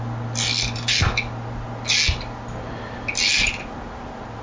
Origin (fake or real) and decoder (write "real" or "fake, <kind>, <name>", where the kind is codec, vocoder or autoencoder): real